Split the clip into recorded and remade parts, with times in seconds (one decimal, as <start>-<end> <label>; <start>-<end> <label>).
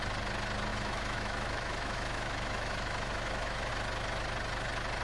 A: 0.0-0.7 recorded; 0.7-3.7 remade; 3.7-5.0 recorded